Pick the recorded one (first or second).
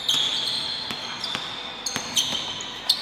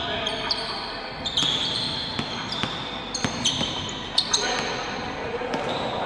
first